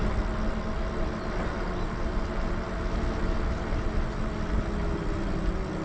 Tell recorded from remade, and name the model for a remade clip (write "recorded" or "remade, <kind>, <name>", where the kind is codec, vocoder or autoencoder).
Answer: recorded